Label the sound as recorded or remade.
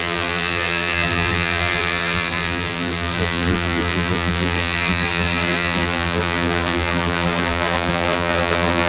remade